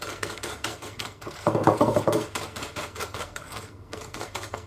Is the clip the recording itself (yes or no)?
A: no